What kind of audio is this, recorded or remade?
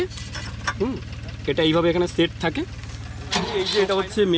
recorded